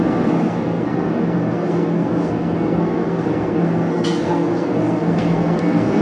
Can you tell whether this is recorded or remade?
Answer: remade